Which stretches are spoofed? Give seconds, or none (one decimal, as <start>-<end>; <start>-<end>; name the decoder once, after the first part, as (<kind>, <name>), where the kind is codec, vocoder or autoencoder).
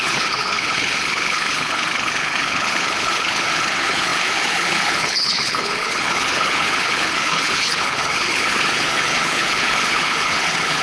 0.0-10.8 (codec, HILCodec)